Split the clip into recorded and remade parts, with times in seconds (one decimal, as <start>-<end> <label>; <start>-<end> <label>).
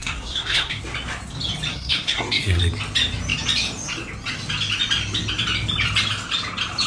0.0-0.8 remade; 0.8-1.7 recorded; 1.7-2.6 remade; 2.6-6.9 recorded